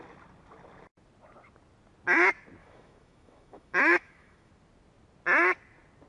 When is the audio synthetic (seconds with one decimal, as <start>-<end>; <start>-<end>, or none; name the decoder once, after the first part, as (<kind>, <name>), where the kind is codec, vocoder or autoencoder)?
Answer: 2.6-4.5 (autoencoder, DAC-VAE)